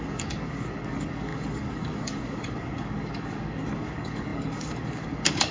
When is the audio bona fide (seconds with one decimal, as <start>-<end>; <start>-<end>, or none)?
none